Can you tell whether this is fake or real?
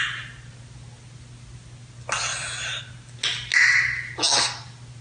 real